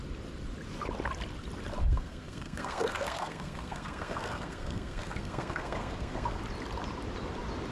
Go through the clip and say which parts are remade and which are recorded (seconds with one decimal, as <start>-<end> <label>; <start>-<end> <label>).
0.0-1.8 recorded; 1.8-6.4 remade; 6.4-7.7 recorded